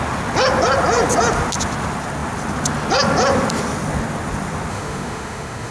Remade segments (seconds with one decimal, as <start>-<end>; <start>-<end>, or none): 4.7-5.7